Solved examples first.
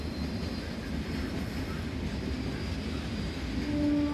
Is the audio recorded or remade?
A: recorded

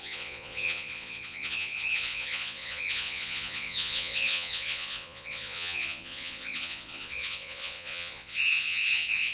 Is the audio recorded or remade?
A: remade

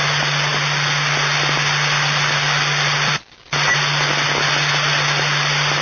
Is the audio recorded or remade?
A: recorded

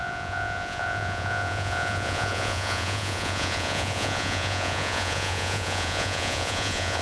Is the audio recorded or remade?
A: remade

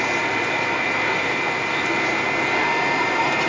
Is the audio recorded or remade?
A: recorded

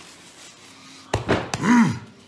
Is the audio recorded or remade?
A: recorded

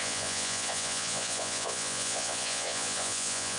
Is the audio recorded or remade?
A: remade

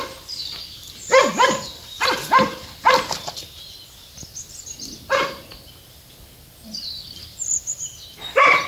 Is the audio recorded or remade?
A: recorded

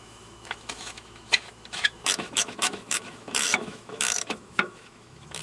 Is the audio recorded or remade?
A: remade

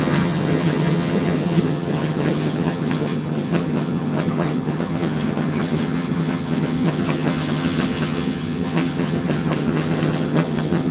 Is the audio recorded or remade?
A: remade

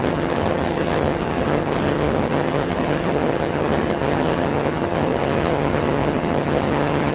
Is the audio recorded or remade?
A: remade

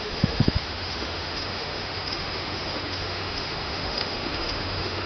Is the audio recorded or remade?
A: remade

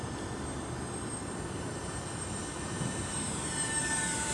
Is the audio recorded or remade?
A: remade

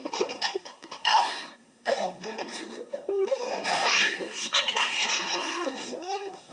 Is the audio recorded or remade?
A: remade